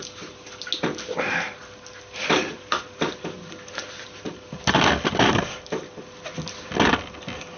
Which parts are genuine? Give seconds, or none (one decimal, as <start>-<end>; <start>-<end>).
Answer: 0.0-7.6